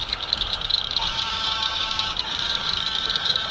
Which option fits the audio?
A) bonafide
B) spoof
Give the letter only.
B